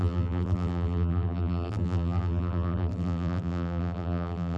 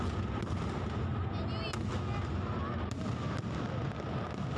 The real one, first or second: second